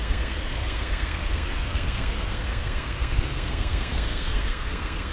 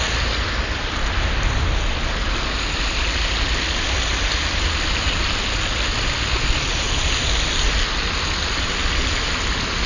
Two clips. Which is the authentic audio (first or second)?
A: second